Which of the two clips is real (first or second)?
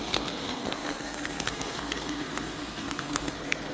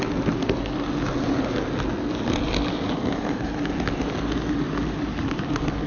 second